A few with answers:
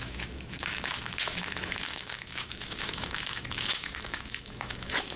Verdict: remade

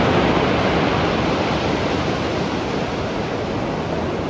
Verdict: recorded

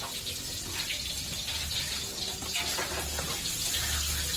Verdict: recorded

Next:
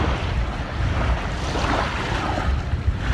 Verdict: recorded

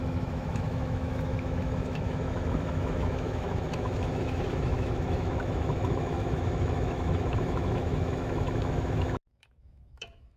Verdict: remade